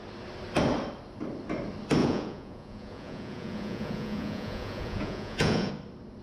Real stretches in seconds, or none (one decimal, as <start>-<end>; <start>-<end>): 0.0-2.0; 5.7-6.2